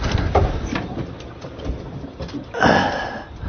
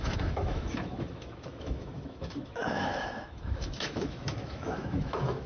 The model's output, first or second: second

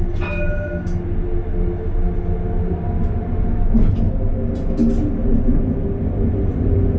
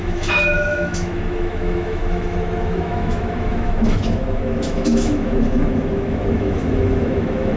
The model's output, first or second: second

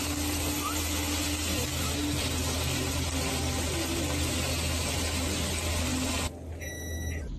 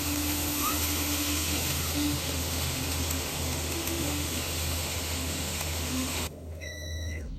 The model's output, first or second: second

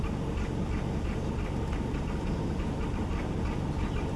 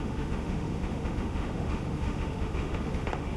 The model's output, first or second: second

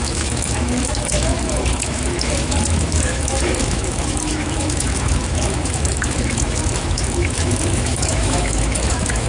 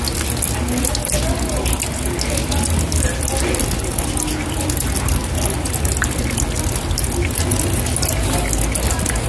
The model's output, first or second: first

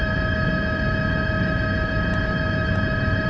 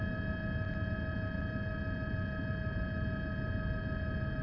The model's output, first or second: first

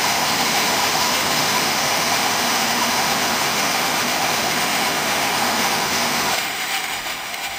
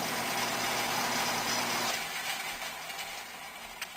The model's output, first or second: first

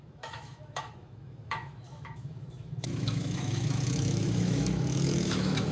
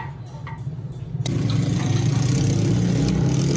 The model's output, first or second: first